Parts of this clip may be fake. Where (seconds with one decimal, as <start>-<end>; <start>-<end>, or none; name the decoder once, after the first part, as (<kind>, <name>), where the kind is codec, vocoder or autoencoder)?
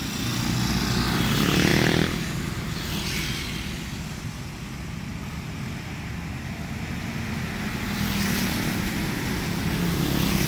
none